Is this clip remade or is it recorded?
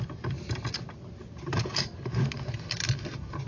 recorded